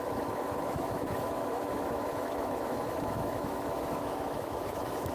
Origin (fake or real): fake